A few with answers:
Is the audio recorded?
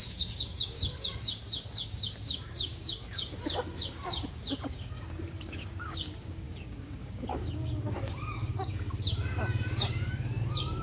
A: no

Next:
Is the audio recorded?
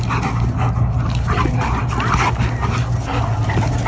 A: yes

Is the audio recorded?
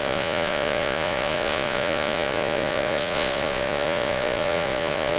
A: no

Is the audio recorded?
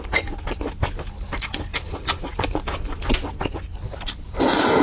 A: yes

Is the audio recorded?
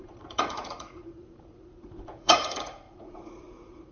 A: no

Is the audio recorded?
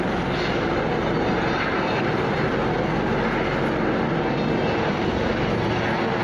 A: yes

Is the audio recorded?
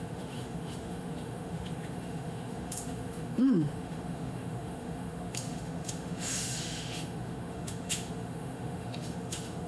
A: no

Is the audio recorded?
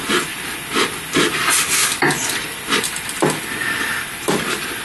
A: yes